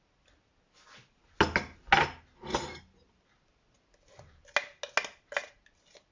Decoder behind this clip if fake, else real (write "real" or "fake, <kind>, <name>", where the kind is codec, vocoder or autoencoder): real